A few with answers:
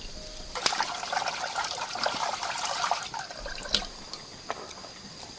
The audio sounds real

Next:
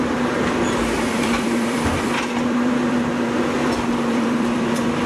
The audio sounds fake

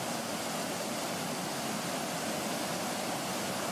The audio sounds real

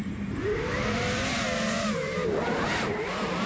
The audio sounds fake